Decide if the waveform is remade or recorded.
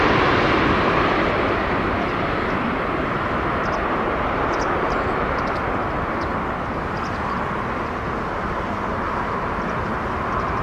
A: recorded